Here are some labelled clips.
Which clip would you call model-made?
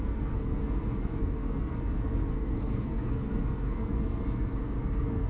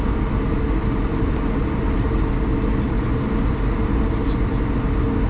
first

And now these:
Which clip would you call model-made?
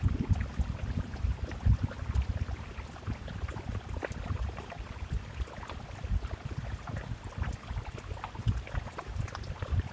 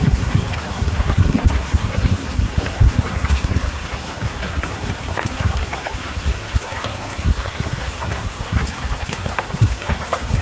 second